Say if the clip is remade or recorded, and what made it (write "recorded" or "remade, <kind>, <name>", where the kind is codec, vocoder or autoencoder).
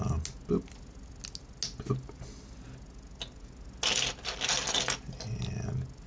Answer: recorded